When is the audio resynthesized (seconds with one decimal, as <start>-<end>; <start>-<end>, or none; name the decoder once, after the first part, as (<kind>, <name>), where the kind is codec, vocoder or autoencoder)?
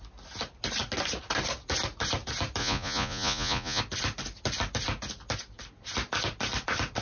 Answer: 2.6-3.8 (vocoder, Vocos)